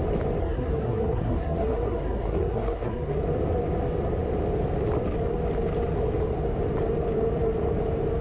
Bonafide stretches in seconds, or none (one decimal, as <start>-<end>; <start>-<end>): 0.0-0.4; 3.2-8.2